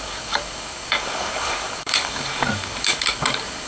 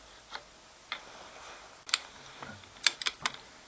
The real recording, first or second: second